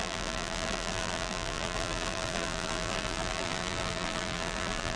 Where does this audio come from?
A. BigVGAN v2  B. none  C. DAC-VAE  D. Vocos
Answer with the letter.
A